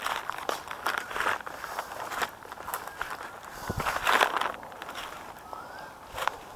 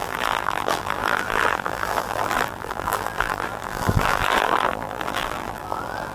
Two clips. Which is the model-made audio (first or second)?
second